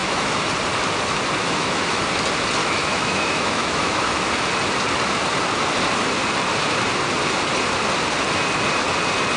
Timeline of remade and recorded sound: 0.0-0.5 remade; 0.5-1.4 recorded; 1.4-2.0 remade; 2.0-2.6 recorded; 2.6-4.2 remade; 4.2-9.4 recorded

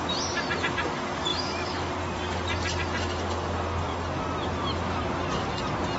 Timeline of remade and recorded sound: 0.0-1.3 recorded; 1.3-1.9 remade; 1.9-6.0 recorded

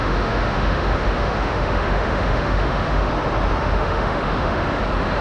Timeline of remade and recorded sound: 0.0-3.1 remade; 3.1-3.6 recorded; 3.6-4.8 remade; 4.8-5.2 recorded

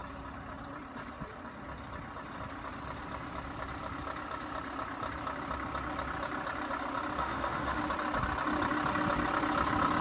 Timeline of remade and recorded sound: 0.0-7.2 recorded; 7.2-7.8 remade; 7.8-10.0 recorded

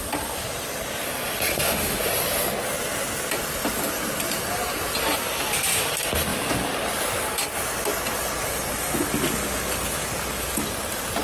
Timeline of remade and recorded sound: 0.0-1.5 recorded; 1.5-2.0 remade; 2.0-11.2 recorded